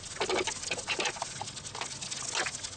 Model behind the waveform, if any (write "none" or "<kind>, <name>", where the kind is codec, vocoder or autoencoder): none